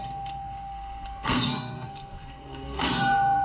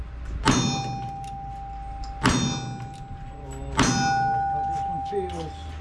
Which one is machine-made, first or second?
first